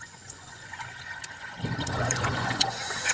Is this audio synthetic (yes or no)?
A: yes